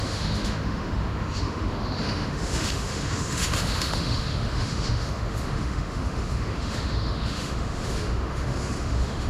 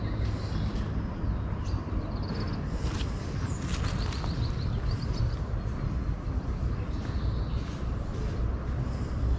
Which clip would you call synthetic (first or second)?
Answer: first